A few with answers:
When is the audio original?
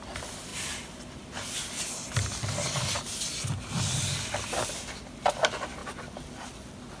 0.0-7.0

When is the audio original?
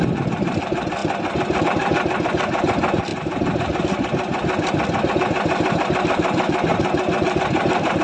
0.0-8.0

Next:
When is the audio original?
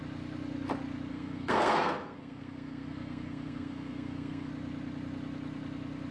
0.0-1.1; 4.5-6.1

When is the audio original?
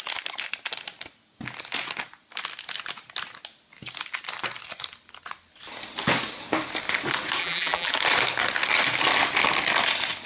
0.0-7.4; 7.9-10.3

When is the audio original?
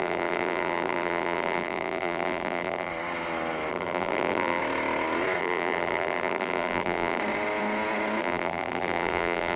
2.9-3.7; 4.6-5.4; 7.2-8.2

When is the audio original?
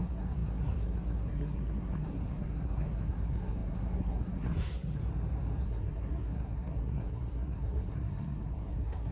5.0-5.6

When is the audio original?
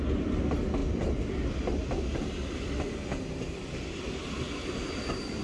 0.0-5.4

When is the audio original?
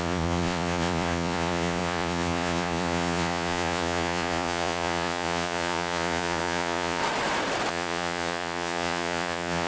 7.0-7.7